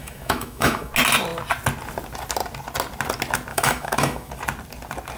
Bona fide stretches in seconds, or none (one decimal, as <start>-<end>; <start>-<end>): 0.9-3.5; 4.3-5.2